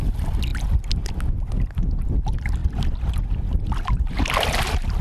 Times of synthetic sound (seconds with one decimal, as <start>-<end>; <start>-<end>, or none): none